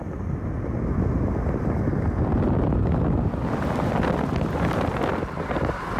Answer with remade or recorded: recorded